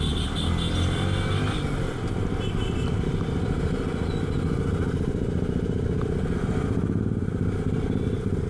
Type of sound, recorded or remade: recorded